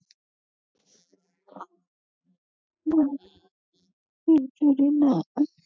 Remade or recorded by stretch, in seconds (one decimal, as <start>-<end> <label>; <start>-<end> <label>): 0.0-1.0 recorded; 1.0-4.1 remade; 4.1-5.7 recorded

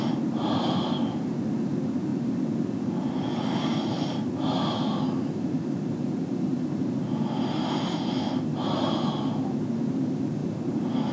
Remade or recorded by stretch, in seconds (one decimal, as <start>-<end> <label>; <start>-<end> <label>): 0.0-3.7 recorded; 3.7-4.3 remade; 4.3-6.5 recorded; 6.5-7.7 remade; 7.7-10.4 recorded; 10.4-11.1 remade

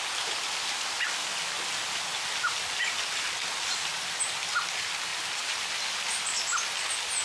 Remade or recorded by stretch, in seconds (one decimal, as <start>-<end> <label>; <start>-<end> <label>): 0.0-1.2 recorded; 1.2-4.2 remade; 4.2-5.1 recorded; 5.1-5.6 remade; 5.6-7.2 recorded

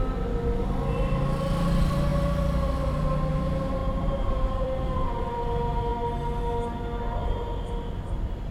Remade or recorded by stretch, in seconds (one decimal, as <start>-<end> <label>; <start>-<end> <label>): 0.0-3.8 recorded; 3.8-5.2 remade; 5.2-8.5 recorded

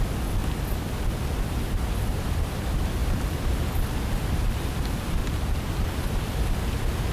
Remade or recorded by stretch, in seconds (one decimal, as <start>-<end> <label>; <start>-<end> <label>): 0.0-3.0 recorded; 3.0-4.8 remade; 4.8-5.2 recorded; 5.2-5.7 remade; 5.7-7.1 recorded

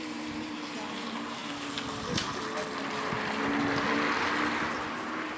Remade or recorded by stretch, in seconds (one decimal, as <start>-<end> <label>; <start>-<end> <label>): 0.0-1.4 remade; 1.4-4.6 recorded; 4.6-5.4 remade

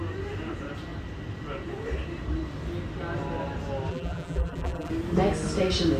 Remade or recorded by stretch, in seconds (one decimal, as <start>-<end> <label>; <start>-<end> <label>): 0.0-3.9 recorded; 3.9-4.9 remade; 4.9-6.0 recorded

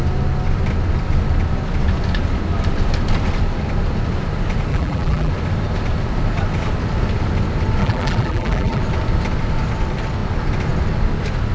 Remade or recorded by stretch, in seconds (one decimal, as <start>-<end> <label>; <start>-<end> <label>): 0.0-4.7 recorded; 4.7-5.3 remade; 5.3-7.8 recorded; 7.8-8.8 remade; 8.8-11.5 recorded